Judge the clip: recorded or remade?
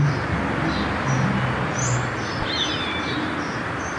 recorded